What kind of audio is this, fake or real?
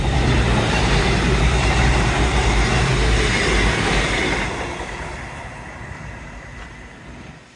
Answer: real